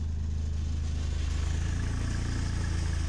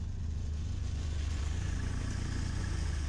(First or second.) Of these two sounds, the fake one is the second